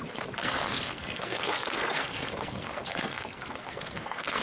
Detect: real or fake fake